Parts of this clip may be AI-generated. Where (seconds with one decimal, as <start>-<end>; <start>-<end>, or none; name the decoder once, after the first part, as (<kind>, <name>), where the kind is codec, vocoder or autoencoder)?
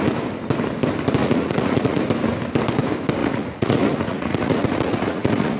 1.2-2.0 (vocoder, Vocos); 3.2-5.6